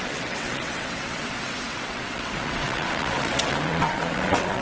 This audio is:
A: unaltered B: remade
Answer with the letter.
B